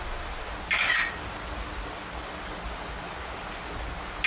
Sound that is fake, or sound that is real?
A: real